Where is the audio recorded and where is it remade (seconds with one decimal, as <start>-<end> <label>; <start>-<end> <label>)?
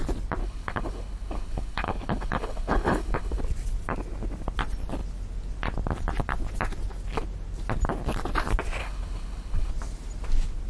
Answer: 0.0-0.4 recorded; 0.4-3.4 remade; 3.4-8.8 recorded; 8.8-9.7 remade; 9.7-10.7 recorded